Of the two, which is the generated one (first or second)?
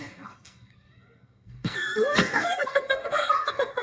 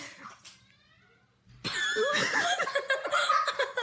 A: first